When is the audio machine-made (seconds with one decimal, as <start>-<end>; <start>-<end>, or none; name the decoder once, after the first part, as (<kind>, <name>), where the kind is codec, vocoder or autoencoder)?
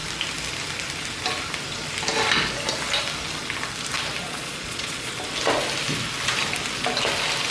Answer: 4.2-5.1 (vocoder, Vocos)